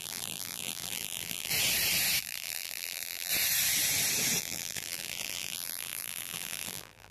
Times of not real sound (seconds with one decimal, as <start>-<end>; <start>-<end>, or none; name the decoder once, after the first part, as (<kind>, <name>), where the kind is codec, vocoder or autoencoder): 0.0-1.5 (vocoder, BigVGAN v2); 2.2-3.3; 4.4-7.1